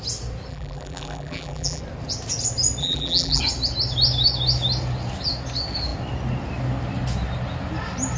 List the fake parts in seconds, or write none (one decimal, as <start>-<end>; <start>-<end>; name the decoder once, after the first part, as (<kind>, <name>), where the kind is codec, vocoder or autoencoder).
0.5-1.8 (vocoder, BigVGAN v2); 2.8-3.4